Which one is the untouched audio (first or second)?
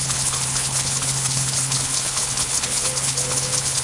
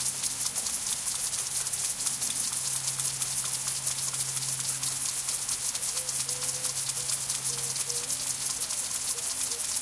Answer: second